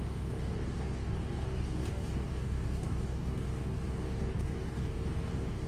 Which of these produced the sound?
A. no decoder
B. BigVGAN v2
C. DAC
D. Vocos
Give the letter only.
C